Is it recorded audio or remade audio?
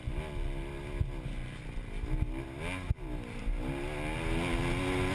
recorded